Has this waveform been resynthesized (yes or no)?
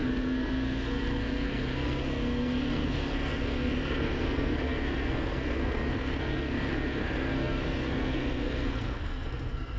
yes